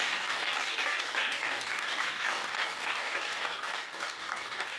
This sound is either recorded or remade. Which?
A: remade